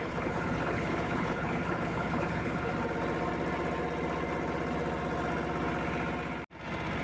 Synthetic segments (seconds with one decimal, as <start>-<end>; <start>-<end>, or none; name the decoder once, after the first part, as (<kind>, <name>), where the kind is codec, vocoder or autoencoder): 0.0-2.7 (codec, HILCodec)

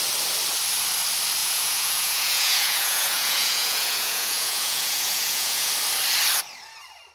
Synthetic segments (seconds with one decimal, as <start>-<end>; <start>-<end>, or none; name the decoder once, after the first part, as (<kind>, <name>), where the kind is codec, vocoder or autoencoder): 1.4-5.7 (vocoder, Vocos)

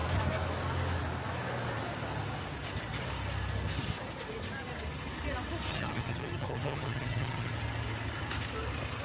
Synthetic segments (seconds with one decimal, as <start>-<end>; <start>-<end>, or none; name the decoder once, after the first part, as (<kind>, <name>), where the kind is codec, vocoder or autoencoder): 5.7-7.5 (vocoder, HiFi-GAN)

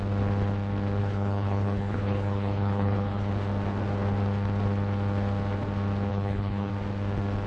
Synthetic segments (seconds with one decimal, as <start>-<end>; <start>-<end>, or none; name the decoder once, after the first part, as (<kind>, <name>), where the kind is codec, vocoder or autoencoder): 1.0-3.3 (codec, HILCodec); 6.1-6.7

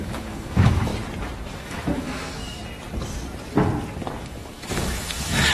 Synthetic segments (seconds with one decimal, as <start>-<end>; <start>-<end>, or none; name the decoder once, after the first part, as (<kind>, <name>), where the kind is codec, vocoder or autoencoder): 0.0-0.9 (autoencoder, DAC-VAE); 1.5-2.6; 4.2-5.5

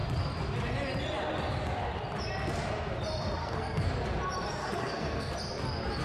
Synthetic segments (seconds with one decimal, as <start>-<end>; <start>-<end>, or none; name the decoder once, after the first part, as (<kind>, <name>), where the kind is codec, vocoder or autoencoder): 3.4-3.9 (codec, SNAC); 4.6-5.3